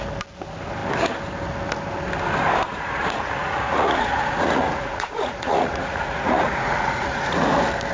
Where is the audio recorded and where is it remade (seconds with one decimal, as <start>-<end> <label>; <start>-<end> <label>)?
0.0-2.7 recorded; 2.7-7.4 remade; 7.4-7.9 recorded